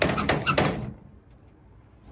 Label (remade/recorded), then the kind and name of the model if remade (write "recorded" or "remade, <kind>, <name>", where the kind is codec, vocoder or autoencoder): recorded